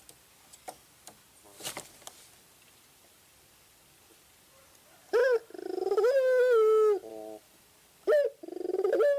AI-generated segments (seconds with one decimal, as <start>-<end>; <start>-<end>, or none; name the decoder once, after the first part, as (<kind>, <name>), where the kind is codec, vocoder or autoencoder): none